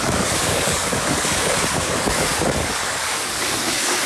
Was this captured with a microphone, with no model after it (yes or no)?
no